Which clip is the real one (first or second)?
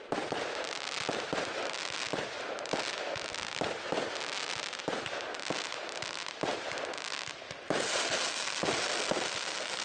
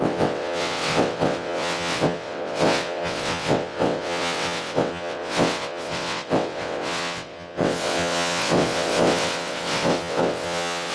first